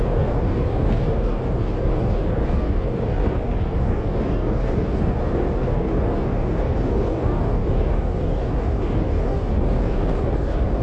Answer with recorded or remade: remade